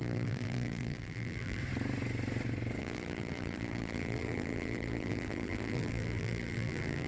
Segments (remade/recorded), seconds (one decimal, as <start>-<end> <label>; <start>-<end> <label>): 0.0-1.6 remade; 1.6-2.8 recorded; 2.8-7.1 remade